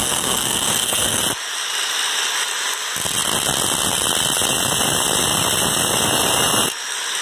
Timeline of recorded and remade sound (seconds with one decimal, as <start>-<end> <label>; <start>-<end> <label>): 0.0-1.2 remade; 1.2-7.2 recorded